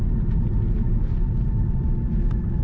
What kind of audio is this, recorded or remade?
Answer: recorded